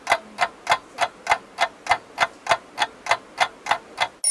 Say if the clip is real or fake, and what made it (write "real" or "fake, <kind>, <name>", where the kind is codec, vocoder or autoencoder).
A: real